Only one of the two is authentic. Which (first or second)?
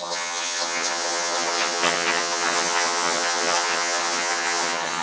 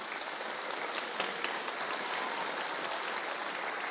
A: second